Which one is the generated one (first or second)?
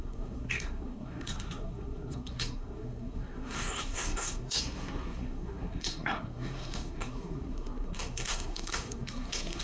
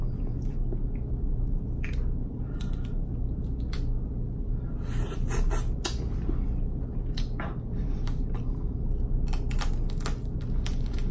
first